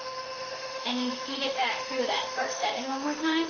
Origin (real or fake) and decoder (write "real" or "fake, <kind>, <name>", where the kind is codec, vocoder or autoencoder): fake, autoencoder, DAC-VAE